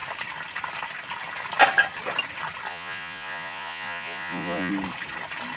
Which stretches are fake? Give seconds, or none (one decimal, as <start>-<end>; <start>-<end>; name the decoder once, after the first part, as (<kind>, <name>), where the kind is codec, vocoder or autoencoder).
2.7-4.7 (vocoder, Vocos)

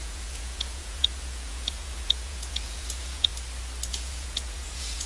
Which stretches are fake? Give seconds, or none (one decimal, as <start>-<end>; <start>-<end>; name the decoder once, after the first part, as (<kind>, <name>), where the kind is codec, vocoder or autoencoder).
0.0-3.3 (vocoder, Vocos); 3.9-5.1

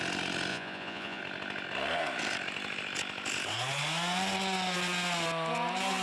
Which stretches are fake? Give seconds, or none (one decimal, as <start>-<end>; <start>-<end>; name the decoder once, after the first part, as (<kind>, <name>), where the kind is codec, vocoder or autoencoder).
0.5-1.2 (vocoder, Vocos)

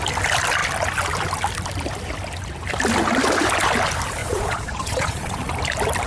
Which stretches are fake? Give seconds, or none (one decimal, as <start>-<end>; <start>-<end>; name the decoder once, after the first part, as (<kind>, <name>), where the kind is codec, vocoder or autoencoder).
4.2-5.5 (vocoder, Vocos)

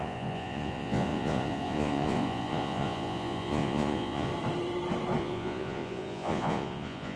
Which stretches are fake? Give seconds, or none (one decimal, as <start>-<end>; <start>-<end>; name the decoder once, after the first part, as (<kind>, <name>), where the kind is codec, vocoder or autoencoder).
0.0-4.3 (vocoder, Vocos); 5.2-7.2